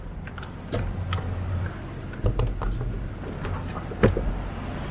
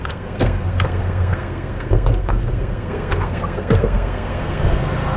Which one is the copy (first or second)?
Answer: second